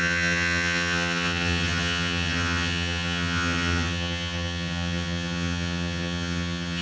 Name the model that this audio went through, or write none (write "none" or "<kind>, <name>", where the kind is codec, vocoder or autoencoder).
vocoder, HiFi-GAN